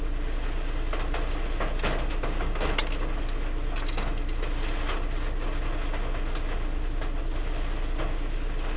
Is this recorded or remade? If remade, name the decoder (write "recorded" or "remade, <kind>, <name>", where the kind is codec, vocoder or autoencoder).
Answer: recorded